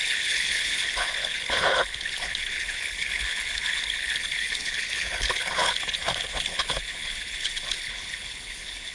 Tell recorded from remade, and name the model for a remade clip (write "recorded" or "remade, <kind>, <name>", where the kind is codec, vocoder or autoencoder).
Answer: remade, codec, HILCodec